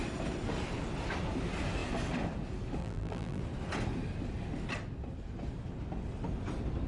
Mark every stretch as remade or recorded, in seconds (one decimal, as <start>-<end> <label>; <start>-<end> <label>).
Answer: 0.0-2.8 recorded; 2.8-3.4 remade; 3.4-6.9 recorded